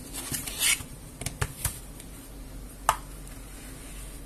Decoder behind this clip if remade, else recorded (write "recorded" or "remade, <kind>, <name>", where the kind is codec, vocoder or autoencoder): recorded